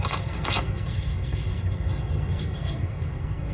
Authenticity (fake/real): fake